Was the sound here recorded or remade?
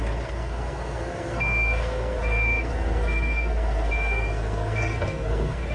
remade